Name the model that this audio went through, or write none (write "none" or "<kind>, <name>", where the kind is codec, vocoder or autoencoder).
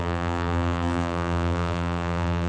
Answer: vocoder, BigVGAN v2